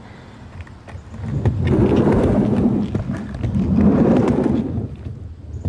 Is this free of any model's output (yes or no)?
yes